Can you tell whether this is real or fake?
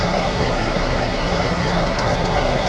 fake